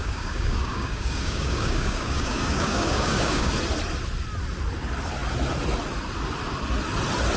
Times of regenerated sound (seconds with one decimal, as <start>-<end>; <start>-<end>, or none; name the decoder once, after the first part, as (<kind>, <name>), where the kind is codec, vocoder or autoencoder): 0.0-3.5 (codec, DAC)